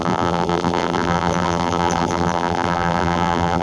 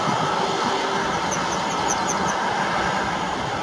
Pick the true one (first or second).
second